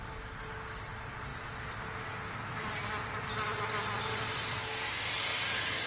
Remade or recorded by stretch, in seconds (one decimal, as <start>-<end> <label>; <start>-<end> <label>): 0.0-5.9 recorded